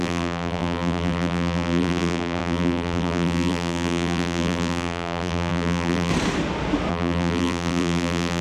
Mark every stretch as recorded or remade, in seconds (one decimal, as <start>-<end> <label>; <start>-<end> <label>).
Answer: 0.0-6.1 remade; 6.1-6.9 recorded; 6.9-8.4 remade